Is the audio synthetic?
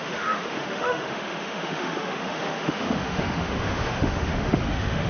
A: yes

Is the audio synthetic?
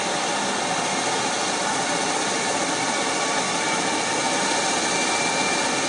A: no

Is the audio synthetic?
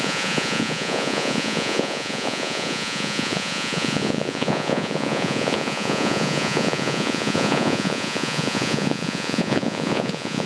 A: yes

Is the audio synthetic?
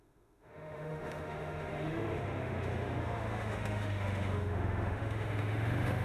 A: yes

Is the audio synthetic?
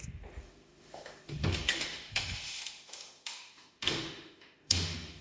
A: yes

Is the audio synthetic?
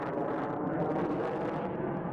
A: no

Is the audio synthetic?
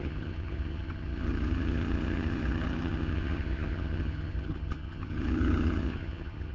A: yes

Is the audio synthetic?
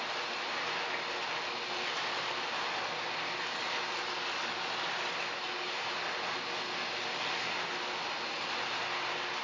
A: no